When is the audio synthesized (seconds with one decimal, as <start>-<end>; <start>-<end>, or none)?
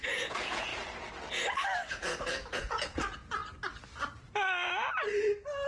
0.0-0.7; 1.9-3.4